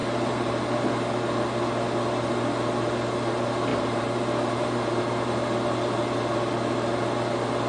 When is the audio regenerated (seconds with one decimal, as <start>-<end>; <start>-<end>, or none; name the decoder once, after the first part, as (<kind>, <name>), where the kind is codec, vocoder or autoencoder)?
0.0-0.5 (vocoder, BigVGAN v2); 3.7-5.0